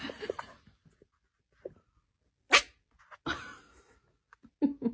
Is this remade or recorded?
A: recorded